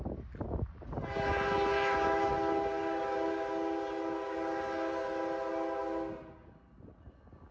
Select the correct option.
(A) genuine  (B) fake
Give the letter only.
A